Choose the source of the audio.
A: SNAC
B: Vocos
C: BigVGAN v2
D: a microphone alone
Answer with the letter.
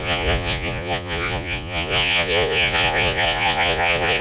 B